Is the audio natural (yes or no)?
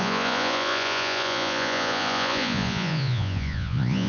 no